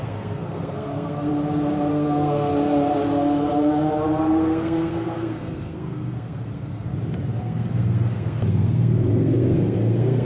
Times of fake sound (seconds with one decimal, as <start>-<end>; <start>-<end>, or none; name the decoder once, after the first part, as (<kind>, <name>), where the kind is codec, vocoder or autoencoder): 0.0-1.3 (codec, SNAC); 1.9-2.5; 4.2-6.9; 7.4-10.2